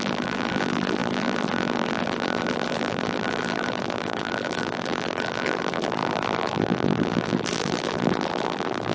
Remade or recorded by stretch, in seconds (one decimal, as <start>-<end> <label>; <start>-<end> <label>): 0.0-8.9 remade